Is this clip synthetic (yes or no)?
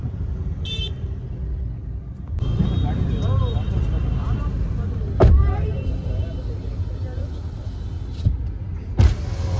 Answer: no